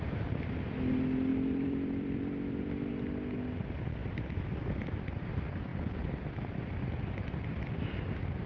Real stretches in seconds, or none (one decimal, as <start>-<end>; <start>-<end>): 0.0-1.3; 2.9-8.5